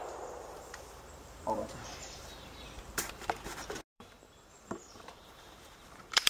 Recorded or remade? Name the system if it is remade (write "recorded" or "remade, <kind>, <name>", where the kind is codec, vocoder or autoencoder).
remade, vocoder, BigVGAN v2